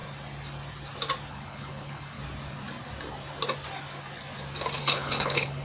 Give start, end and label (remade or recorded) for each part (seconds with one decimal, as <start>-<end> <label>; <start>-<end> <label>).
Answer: 0.0-1.3 recorded; 1.3-2.2 remade; 2.2-4.8 recorded; 4.8-5.6 remade